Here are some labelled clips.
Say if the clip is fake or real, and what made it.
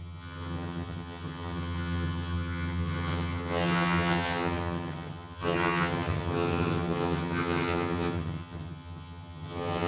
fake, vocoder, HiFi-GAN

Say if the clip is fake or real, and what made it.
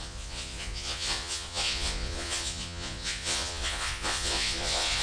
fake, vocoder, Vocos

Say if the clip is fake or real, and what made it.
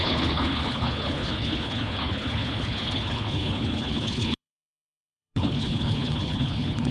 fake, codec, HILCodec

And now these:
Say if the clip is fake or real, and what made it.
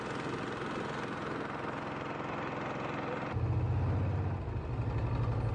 real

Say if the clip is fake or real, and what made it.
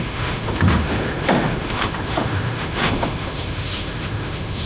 fake, autoencoder, DAC-VAE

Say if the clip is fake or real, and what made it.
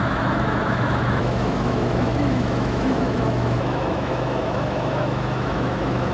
fake, autoencoder, DAC-VAE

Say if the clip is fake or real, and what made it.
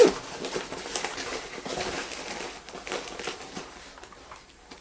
fake, vocoder, BigVGAN v2